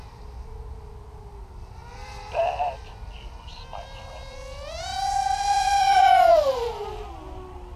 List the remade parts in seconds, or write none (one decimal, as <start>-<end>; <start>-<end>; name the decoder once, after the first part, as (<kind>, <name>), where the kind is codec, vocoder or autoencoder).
none